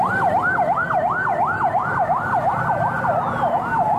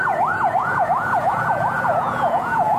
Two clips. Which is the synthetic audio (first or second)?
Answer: second